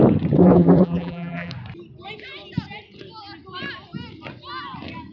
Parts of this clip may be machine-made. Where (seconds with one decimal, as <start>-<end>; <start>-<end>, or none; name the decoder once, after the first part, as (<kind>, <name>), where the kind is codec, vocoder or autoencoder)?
0.4-1.5 (vocoder, BigVGAN v2)